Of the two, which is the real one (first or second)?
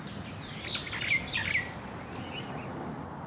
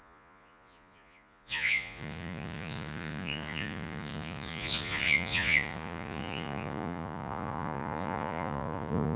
first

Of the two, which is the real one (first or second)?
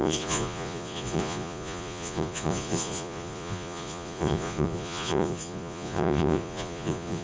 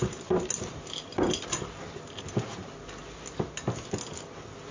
second